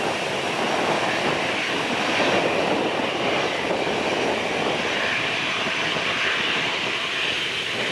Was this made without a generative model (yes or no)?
yes